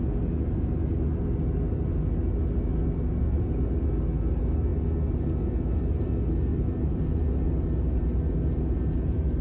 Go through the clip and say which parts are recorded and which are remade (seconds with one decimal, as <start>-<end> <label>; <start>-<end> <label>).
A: 0.0-2.7 recorded; 2.7-3.7 remade; 3.7-6.5 recorded; 6.5-7.4 remade; 7.4-9.4 recorded

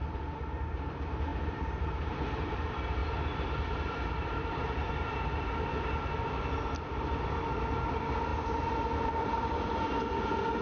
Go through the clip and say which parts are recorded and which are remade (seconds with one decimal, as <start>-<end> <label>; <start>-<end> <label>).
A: 0.0-1.3 recorded; 1.3-2.6 remade; 2.6-3.0 recorded; 3.0-4.9 remade; 4.9-10.6 recorded